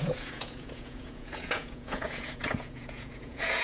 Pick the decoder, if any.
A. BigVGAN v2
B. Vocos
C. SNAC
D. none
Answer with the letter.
B